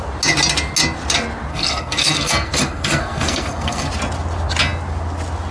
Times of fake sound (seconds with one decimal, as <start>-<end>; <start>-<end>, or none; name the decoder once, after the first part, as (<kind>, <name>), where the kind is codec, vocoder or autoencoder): 1.5-3.9 (codec, SNAC)